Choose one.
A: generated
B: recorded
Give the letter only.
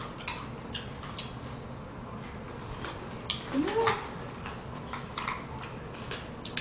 B